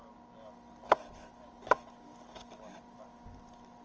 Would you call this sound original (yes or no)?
yes